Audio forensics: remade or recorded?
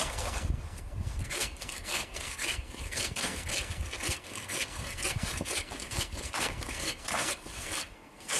remade